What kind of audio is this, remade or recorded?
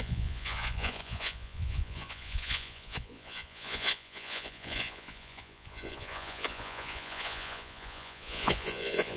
remade